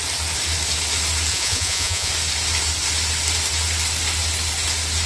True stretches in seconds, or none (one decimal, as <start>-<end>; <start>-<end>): 0.0-1.3; 2.1-5.1